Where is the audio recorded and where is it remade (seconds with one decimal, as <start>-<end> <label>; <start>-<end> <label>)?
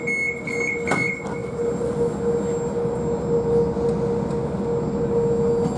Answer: 0.0-5.8 recorded